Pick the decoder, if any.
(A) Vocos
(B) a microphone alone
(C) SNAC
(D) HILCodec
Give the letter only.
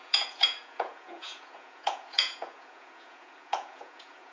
A